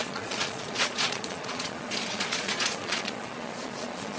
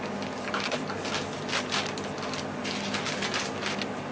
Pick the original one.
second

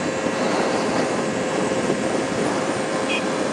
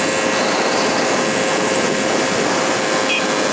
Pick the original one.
second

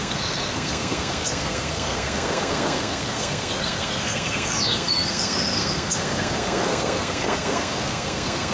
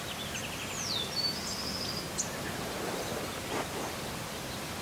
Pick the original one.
second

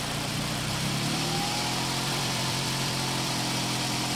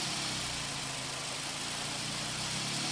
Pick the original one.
second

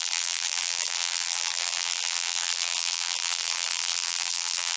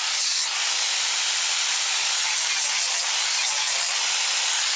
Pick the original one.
second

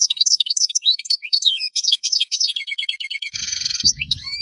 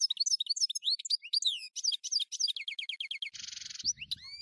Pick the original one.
second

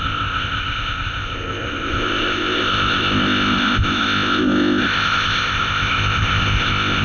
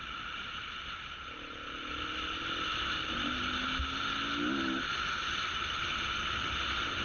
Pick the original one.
second